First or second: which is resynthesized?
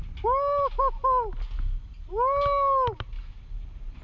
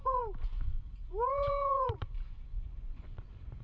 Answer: second